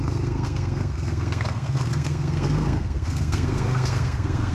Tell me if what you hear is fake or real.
fake